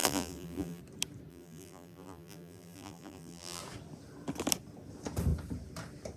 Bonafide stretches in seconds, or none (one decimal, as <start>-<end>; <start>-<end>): 0.8-1.3; 3.6-6.2